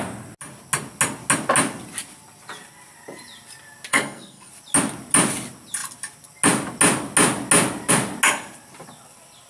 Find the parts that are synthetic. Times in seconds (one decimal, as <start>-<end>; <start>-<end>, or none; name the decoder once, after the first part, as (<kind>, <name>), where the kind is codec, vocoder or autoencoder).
3.9-4.5 (codec, SNAC)